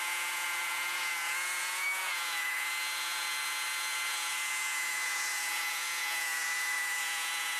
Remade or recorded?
remade